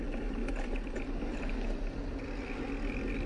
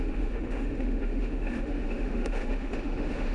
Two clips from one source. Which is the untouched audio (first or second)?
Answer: first